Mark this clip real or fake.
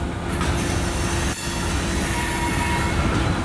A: real